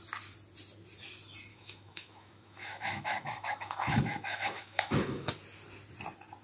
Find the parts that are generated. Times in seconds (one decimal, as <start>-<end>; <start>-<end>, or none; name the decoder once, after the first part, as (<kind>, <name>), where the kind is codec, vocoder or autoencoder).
1.5-5.3 (autoencoder, DAC-VAE)